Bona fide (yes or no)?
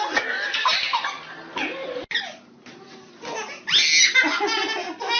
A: yes